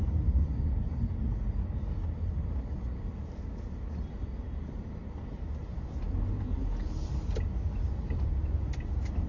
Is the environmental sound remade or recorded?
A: recorded